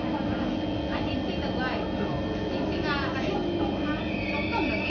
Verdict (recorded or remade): recorded